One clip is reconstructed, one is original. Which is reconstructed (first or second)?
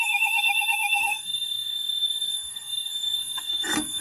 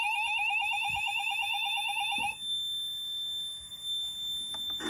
first